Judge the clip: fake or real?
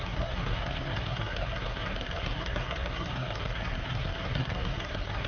fake